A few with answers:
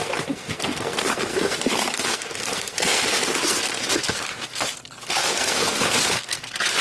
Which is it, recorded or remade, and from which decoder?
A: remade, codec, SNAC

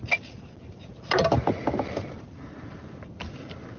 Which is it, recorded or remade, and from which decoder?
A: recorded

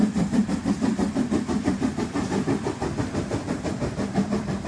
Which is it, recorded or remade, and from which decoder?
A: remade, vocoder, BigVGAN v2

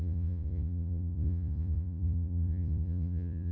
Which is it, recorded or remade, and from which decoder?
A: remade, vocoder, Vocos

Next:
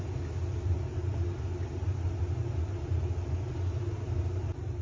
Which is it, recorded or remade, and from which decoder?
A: recorded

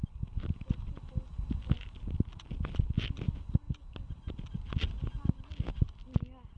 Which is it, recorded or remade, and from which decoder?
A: recorded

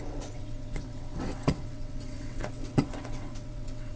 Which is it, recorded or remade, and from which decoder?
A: remade, vocoder, WaveNeXt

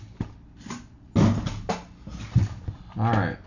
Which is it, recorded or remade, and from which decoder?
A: recorded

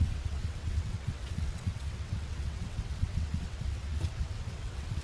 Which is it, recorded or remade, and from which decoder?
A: remade, vocoder, WaveNeXt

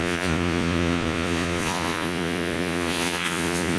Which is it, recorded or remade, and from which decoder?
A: remade, vocoder, Vocos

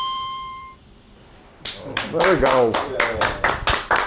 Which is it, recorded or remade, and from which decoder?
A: remade, vocoder, BigVGAN v2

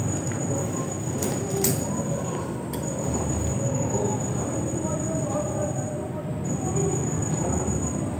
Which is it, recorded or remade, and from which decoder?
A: recorded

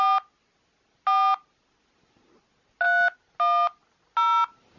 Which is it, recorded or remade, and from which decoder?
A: recorded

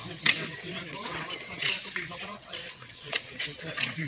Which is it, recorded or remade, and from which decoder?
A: remade, vocoder, WaveNeXt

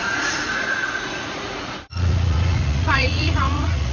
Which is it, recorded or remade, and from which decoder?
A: remade, vocoder, Vocos